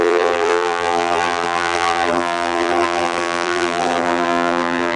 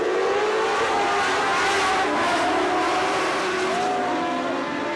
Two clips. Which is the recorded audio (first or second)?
second